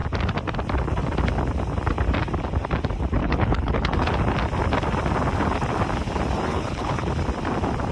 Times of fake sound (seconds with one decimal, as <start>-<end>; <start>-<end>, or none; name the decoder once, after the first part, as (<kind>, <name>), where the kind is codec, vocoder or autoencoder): 3.2-4.1 (codec, HILCodec); 6.5-7.1

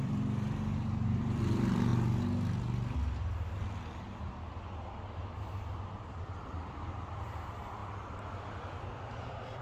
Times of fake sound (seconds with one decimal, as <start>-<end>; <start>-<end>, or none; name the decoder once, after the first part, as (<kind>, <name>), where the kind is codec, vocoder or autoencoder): 0.0-1.9 (vocoder, BigVGAN v2); 5.4-9.6